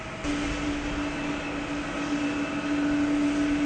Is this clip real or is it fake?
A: real